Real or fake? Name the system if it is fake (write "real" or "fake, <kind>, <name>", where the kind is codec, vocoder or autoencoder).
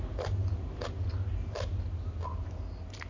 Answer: real